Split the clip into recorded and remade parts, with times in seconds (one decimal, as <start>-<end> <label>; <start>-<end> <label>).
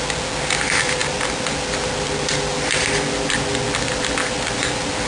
0.0-5.1 recorded